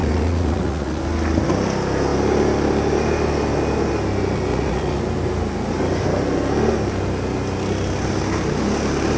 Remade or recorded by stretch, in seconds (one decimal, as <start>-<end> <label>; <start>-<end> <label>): 0.0-1.0 remade; 1.0-4.5 recorded; 4.5-5.0 remade; 5.0-9.2 recorded